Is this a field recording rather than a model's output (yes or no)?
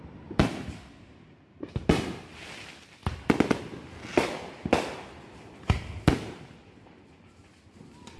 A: yes